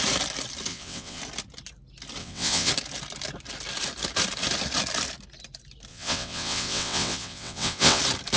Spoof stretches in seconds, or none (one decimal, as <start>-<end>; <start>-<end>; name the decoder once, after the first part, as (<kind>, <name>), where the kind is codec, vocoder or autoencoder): 0.7-1.2 (vocoder, WaveNeXt); 2.2-2.7; 5.9-8.0